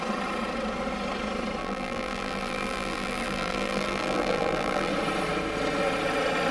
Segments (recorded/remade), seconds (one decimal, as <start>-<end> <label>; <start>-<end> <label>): 0.0-1.6 recorded; 1.6-4.9 remade; 4.9-6.5 recorded